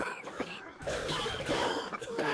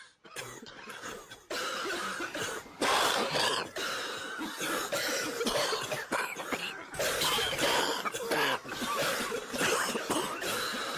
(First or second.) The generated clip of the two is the first